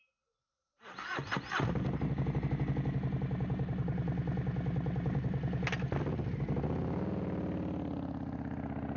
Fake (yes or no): no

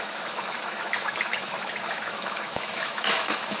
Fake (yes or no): yes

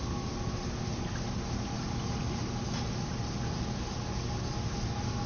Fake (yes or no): no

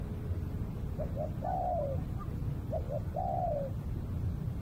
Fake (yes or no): no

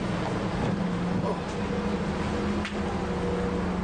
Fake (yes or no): no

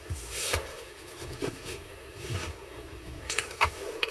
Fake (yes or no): yes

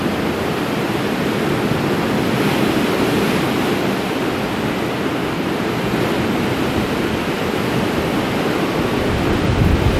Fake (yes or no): no